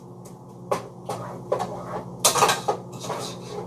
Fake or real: real